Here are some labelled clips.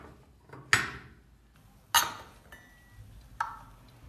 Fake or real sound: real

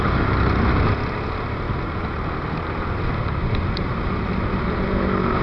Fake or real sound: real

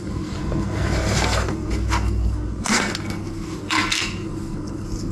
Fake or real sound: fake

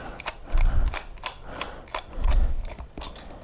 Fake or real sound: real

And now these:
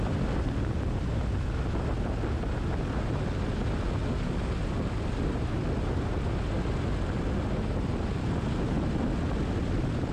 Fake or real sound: real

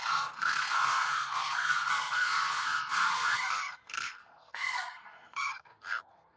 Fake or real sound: fake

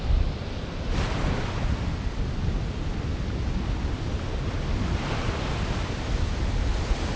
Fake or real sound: real